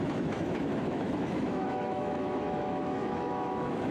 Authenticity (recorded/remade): remade